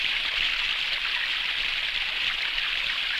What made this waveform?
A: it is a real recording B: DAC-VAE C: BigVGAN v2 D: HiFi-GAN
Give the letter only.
A